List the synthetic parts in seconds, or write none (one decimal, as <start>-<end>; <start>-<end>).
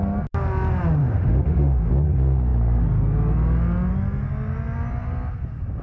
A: 1.0-1.9